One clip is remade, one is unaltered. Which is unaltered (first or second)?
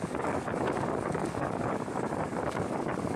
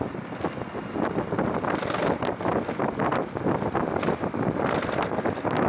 second